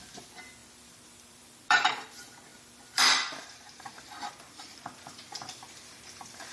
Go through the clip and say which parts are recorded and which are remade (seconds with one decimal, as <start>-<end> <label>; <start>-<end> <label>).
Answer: 0.0-6.5 remade